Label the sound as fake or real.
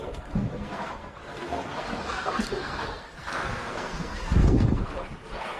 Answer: fake